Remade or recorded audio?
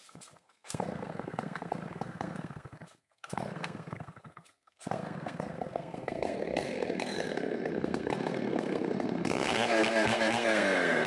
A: remade